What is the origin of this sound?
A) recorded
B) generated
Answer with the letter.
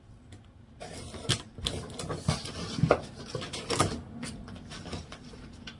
A